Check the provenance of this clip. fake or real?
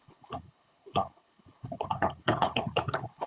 fake